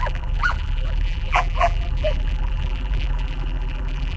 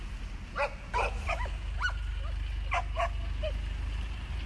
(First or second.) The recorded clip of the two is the second